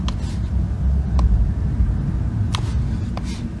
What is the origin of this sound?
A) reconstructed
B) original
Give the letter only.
B